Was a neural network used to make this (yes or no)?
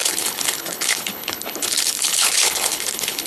yes